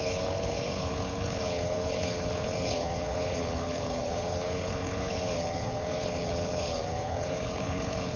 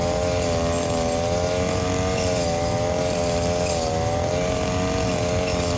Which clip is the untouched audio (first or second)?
second